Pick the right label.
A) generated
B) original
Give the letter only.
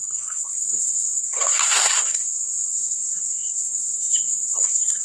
A